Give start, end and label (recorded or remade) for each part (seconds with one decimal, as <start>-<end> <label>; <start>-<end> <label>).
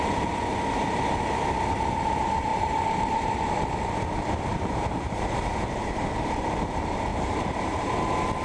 0.0-2.5 recorded; 2.5-3.5 remade; 3.5-4.5 recorded; 4.5-6.0 remade; 6.0-7.1 recorded; 7.1-8.0 remade; 8.0-8.4 recorded